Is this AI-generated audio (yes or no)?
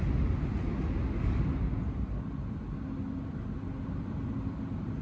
no